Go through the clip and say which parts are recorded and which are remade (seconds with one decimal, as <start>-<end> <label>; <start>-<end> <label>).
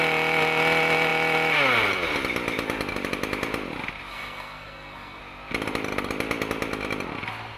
0.0-4.1 recorded; 4.1-5.2 remade; 5.2-7.6 recorded